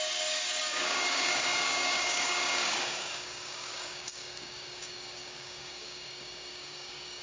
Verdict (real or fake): fake